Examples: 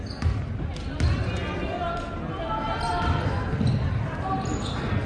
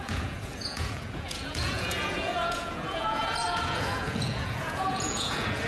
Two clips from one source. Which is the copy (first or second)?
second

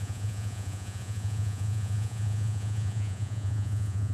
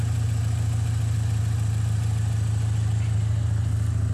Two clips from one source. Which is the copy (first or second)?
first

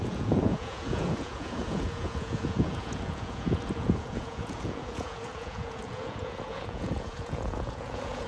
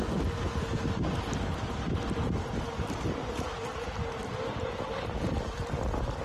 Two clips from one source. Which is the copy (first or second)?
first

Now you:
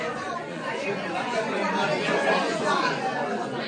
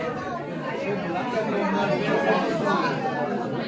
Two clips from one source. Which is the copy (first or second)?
first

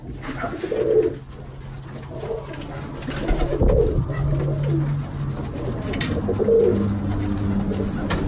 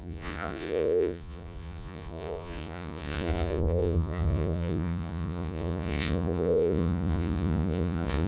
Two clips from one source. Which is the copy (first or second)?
second